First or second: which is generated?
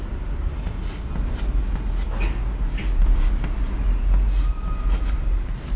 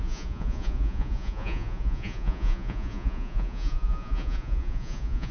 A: second